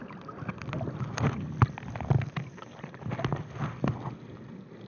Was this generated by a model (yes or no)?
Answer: no